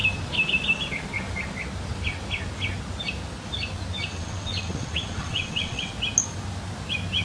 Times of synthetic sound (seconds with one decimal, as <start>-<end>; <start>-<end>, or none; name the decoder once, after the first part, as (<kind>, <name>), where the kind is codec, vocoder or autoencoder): 4.1-5.9 (vocoder, WaveNeXt)